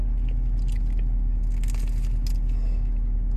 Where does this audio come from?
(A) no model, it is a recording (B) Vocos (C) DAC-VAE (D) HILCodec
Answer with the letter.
A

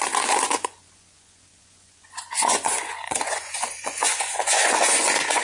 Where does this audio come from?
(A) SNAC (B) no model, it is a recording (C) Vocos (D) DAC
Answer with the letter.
C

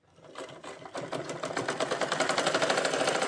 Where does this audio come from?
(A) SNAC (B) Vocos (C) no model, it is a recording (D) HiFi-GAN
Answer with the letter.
C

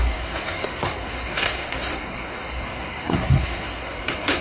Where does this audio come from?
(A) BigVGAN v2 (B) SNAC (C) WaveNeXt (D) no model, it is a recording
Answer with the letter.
B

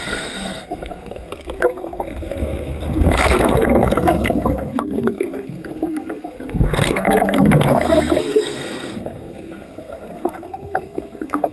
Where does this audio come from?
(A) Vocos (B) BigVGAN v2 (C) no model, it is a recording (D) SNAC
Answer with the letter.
D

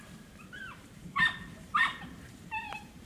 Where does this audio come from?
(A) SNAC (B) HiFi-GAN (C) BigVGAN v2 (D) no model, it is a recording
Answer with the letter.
C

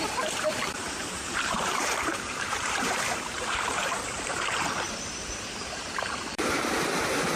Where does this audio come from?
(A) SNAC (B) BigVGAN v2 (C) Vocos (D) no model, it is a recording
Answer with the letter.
B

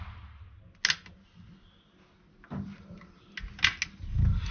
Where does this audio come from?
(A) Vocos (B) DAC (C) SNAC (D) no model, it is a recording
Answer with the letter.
D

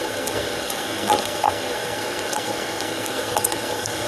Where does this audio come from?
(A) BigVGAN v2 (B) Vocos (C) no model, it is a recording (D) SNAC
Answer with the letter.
D